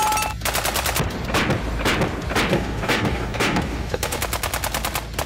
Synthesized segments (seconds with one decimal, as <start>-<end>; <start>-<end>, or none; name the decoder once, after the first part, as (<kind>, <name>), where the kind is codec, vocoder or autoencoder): 2.5-4.2 (codec, DAC)